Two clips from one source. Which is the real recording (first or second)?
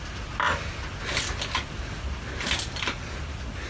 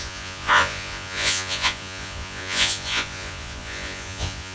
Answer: first